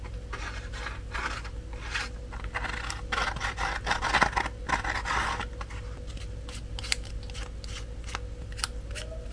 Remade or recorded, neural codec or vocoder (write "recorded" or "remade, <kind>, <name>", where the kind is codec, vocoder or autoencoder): recorded